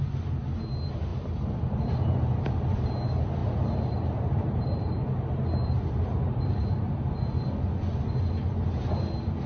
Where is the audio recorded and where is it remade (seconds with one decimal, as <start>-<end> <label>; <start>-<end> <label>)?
0.0-3.4 recorded; 3.4-6.9 remade; 6.9-9.5 recorded